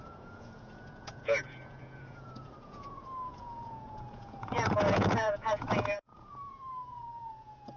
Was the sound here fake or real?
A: fake